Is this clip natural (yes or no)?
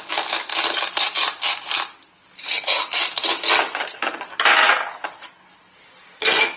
yes